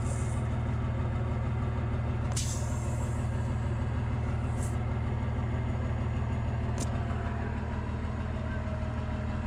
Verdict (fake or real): real